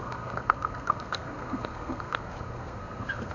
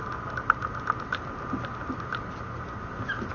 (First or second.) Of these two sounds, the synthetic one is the first